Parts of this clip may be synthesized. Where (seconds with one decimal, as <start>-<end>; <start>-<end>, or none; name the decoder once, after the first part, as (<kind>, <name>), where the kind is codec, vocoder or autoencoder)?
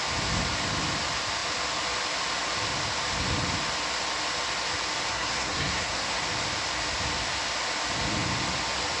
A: 5.1-6.2 (codec, SNAC)